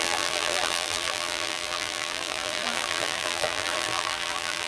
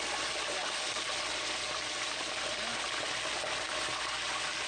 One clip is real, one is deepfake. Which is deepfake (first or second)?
first